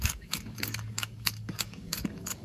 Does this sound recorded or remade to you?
remade